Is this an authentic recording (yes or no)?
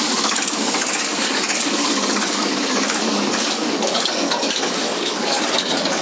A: no